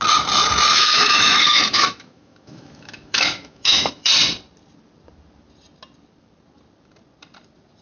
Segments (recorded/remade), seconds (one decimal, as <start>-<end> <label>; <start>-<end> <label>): 0.0-0.7 recorded; 0.7-4.1 remade; 4.1-7.8 recorded